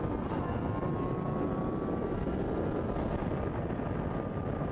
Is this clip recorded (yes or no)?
yes